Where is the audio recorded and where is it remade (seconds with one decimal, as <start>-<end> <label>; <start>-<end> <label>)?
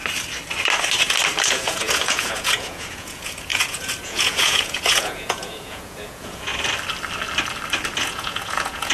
0.0-1.5 recorded; 1.5-6.5 remade; 6.5-8.0 recorded; 8.0-8.9 remade